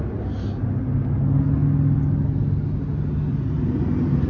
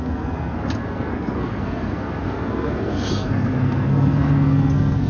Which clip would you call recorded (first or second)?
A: first